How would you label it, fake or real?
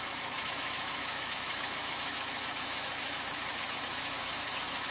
fake